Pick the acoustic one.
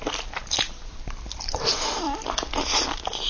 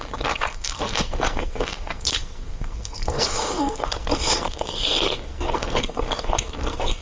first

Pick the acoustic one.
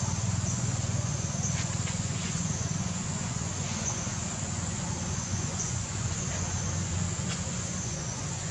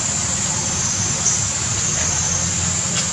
second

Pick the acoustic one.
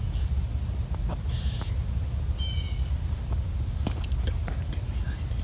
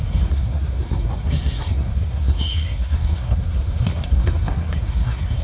first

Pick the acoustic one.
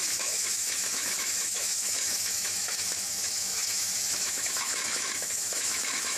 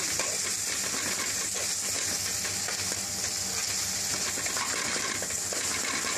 second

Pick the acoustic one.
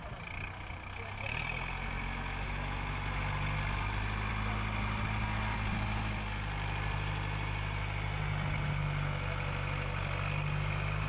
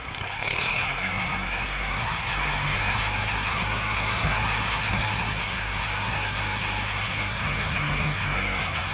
first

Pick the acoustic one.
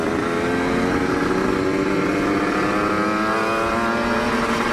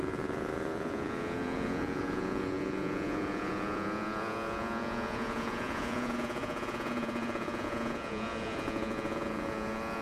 first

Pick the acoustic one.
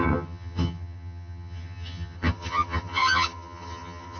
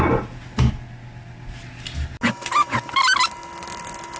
second